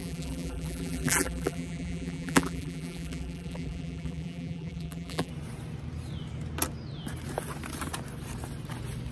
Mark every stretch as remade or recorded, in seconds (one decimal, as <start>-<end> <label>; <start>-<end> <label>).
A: 0.0-5.3 remade; 5.3-9.1 recorded